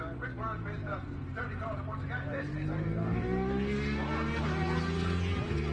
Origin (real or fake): real